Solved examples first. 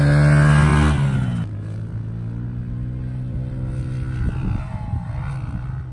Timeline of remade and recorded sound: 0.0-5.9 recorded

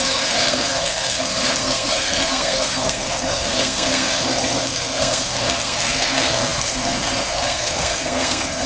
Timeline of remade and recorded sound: 0.0-8.7 remade

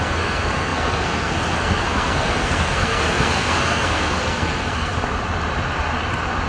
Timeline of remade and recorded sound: 0.0-4.9 remade; 4.9-6.5 recorded

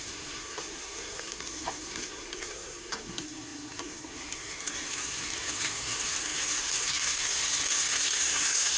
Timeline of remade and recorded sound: 0.0-8.8 remade

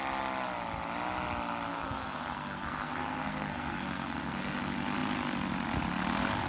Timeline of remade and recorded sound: 0.0-1.7 recorded; 1.7-4.6 remade; 4.6-6.5 recorded

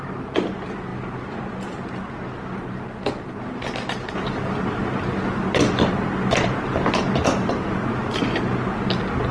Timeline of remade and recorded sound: 0.0-9.3 recorded